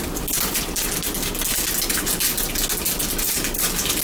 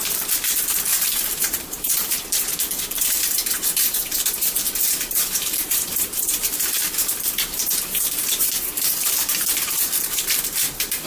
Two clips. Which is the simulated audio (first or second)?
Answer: second